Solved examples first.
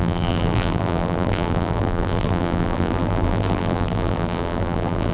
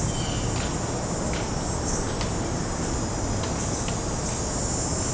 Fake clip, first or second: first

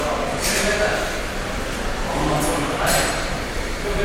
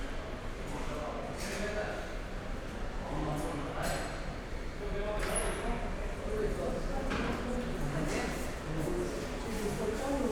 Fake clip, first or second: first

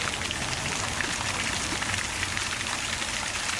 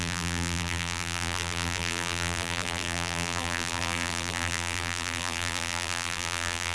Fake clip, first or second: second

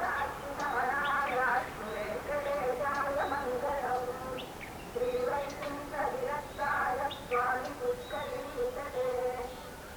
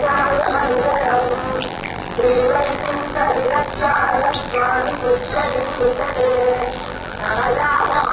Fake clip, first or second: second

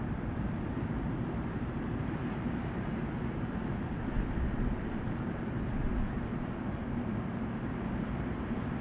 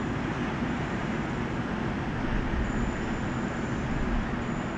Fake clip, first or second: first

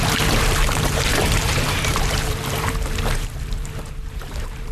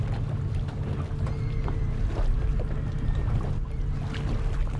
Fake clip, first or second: first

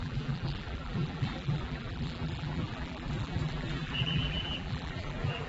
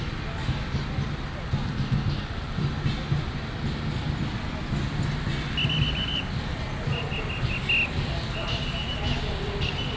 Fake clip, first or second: first